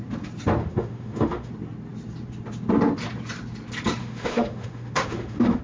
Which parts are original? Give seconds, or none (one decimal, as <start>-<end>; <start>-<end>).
0.0-0.6; 1.5-4.0